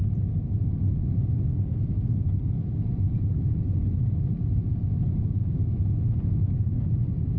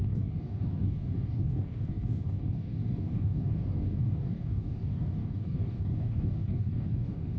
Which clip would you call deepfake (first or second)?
second